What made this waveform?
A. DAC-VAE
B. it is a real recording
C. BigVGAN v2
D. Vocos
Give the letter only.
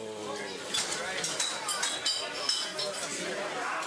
B